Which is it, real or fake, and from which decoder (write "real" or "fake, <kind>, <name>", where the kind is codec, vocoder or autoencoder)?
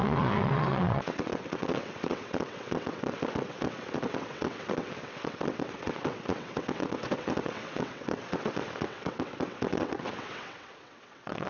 fake, vocoder, WaveNeXt